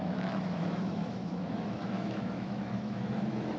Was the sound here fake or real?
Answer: fake